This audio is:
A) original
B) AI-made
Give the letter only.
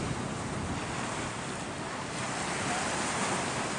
A